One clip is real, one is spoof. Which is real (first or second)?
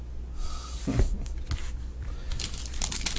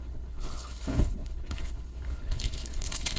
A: first